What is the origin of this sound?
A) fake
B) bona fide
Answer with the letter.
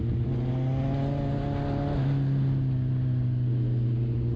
B